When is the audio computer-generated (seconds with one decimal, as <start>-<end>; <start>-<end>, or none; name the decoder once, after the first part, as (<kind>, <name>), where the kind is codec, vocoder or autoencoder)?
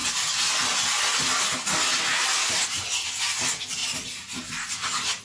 none